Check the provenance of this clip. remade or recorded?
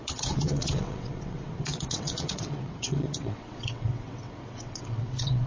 remade